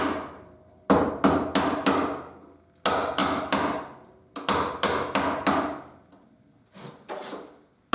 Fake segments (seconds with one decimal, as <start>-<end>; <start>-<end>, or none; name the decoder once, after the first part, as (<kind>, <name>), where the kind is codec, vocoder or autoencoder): none